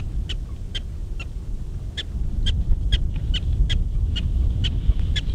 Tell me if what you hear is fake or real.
real